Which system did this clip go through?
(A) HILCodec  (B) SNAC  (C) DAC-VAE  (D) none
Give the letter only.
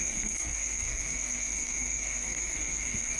B